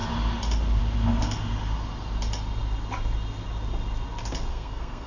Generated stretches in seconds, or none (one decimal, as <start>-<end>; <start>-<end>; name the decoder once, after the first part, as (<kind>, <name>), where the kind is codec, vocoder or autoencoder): 4.5-5.1 (codec, SNAC)